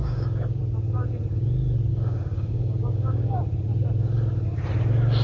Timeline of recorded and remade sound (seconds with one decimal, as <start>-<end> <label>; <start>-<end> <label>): 0.0-0.6 remade; 0.6-1.9 recorded; 1.9-3.4 remade; 3.4-5.2 recorded